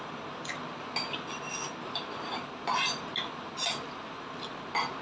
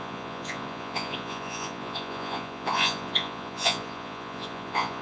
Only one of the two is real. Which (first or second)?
first